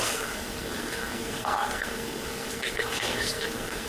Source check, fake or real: fake